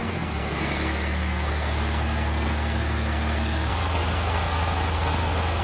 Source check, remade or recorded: remade